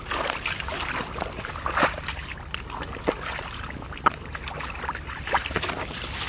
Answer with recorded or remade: remade